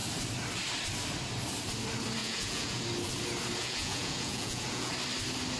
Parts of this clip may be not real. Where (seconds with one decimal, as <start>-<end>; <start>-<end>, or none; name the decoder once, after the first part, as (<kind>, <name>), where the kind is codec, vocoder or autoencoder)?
2.2-2.8 (vocoder, Vocos); 3.6-4.9